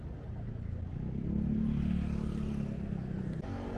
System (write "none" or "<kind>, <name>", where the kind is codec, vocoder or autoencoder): none